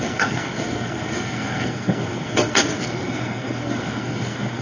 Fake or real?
fake